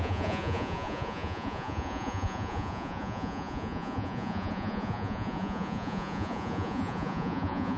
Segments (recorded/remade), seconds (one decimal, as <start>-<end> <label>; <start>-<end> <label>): 0.0-7.8 remade